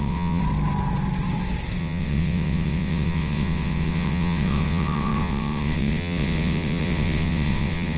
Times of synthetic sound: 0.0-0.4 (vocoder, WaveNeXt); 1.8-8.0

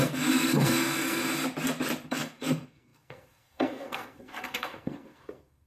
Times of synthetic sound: 0.0-1.2 (codec, SNAC); 2.1-5.7